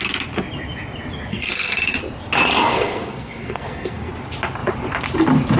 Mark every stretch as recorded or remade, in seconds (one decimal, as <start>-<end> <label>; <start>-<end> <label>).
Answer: 0.0-1.3 recorded; 1.3-2.0 remade; 2.0-2.7 recorded; 2.7-4.1 remade; 4.1-5.6 recorded